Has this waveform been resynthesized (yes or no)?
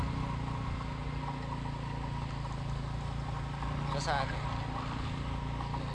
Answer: no